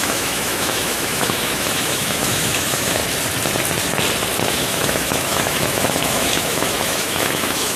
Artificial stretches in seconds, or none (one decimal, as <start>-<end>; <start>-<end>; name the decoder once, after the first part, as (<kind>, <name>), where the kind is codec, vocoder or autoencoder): 0.0-3.0 (autoencoder, DAC-VAE); 4.4-7.8